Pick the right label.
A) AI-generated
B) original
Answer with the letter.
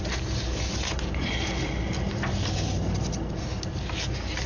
B